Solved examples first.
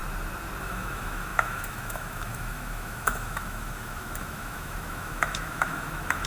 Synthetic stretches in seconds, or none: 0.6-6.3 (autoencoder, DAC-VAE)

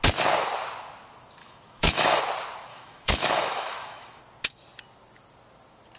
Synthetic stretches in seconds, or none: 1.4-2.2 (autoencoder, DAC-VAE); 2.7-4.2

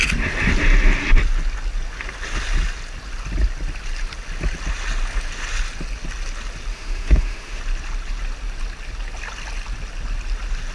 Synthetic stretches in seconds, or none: 6.7-7.6 (autoencoder, DAC-VAE)